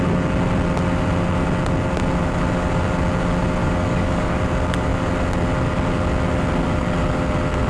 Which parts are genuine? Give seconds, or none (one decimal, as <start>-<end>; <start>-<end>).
0.0-3.6; 4.4-7.7

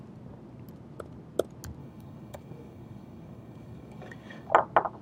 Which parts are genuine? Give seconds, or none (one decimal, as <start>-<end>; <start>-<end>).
0.0-1.8; 4.5-5.0

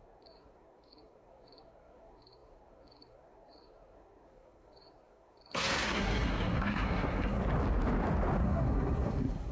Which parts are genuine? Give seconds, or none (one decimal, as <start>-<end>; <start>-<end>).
7.4-8.4

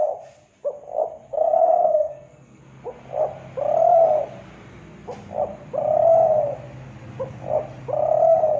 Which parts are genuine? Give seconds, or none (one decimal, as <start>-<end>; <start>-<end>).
0.0-1.3; 2.6-8.6

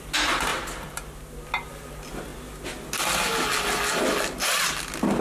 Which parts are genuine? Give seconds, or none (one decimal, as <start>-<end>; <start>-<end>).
0.0-5.2

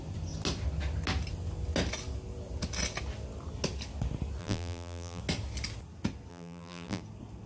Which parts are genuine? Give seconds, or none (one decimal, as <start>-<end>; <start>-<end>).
0.0-4.4; 5.2-6.3; 7.0-7.5